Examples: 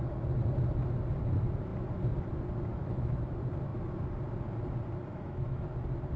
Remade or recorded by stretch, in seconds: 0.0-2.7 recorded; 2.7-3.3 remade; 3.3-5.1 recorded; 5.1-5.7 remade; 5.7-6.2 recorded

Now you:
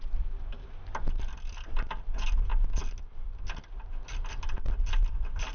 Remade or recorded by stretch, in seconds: 0.0-5.5 recorded

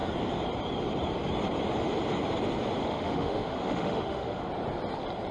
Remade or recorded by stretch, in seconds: 0.0-2.8 recorded; 2.8-4.5 remade; 4.5-5.3 recorded

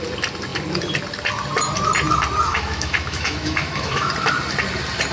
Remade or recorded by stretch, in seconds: 0.0-2.5 recorded; 2.5-4.1 remade; 4.1-5.1 recorded

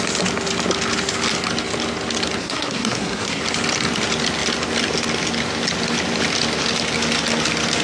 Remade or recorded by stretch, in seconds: 0.0-2.4 recorded; 2.4-3.4 remade; 3.4-7.8 recorded